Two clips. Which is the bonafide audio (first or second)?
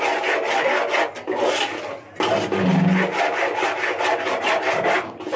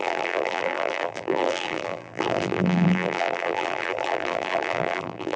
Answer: first